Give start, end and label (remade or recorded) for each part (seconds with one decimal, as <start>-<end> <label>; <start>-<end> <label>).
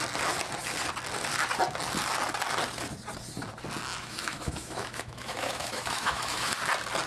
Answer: 0.0-3.9 recorded; 3.9-6.5 remade; 6.5-7.1 recorded